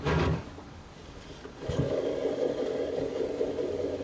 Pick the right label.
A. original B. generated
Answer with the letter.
B